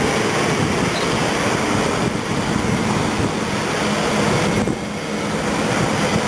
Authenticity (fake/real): real